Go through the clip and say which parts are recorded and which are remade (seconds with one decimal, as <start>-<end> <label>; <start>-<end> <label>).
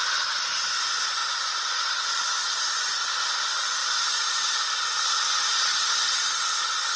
0.0-7.0 recorded